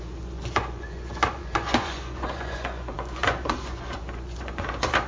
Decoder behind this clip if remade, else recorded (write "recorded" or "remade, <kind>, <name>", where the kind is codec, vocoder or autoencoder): remade, vocoder, Vocos